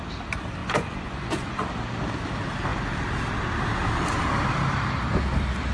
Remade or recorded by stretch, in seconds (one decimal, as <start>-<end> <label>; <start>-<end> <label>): 0.0-0.6 recorded; 0.6-1.7 remade; 1.7-5.7 recorded

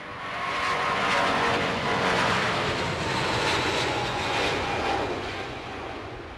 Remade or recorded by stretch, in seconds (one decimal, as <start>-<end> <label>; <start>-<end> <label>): 0.0-2.4 remade; 2.4-3.0 recorded; 3.0-6.4 remade

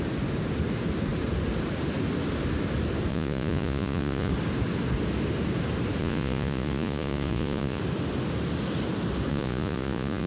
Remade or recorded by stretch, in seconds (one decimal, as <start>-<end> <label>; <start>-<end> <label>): 0.0-3.1 recorded; 3.1-4.3 remade; 4.3-6.0 recorded; 6.0-7.8 remade; 7.8-9.3 recorded; 9.3-10.3 remade